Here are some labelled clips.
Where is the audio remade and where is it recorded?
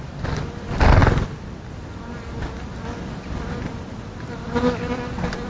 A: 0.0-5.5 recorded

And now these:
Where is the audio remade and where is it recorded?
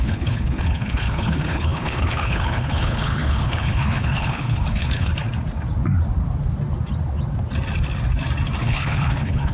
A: 0.0-5.1 remade; 5.1-8.6 recorded; 8.6-9.5 remade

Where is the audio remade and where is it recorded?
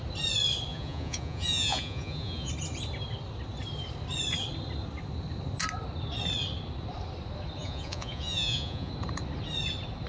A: 0.0-0.7 recorded; 0.7-2.5 remade; 2.5-7.6 recorded; 7.6-8.9 remade; 8.9-10.1 recorded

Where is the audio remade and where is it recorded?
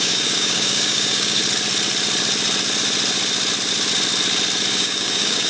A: 0.0-1.4 remade; 1.4-4.7 recorded; 4.7-5.5 remade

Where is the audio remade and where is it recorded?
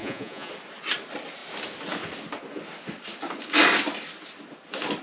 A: 0.0-0.5 remade; 0.5-5.0 recorded